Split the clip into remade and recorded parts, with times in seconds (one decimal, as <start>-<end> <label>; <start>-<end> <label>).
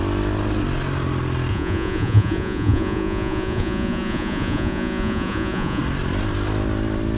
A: 0.0-1.5 recorded; 1.5-5.8 remade; 5.8-7.2 recorded